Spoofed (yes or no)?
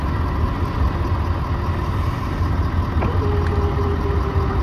no